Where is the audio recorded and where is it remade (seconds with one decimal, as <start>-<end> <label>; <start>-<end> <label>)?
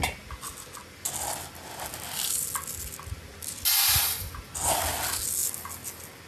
0.0-6.3 recorded